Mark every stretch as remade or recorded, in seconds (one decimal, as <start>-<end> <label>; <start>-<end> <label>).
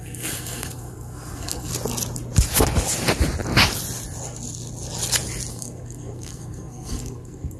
0.0-1.7 remade; 1.7-5.5 recorded; 5.5-7.6 remade